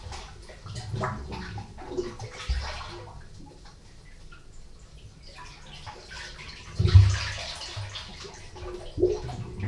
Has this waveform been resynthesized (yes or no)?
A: no